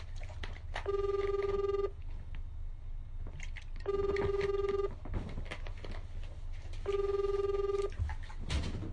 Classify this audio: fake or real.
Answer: real